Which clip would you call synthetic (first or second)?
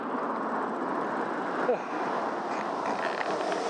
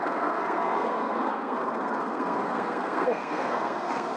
second